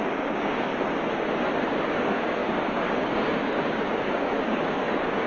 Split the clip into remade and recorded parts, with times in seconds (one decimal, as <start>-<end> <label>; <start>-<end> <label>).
0.0-0.7 remade; 0.7-1.9 recorded; 1.9-5.3 remade